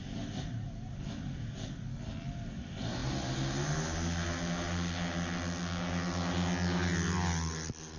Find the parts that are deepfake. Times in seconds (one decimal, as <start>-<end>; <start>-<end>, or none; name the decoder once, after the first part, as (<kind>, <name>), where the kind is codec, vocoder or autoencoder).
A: none